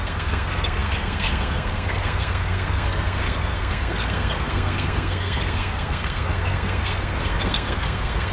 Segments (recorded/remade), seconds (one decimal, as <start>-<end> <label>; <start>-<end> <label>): 0.0-8.3 remade